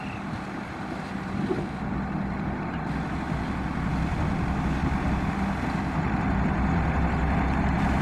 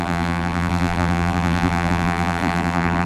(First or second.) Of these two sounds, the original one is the first